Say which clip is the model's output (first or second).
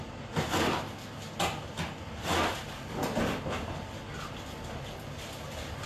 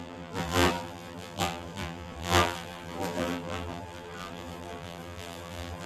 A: second